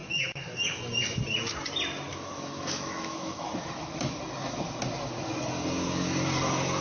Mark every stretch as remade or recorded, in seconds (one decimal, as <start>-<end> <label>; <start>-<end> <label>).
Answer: 0.0-0.8 remade; 0.8-2.1 recorded; 2.1-4.2 remade; 4.2-6.8 recorded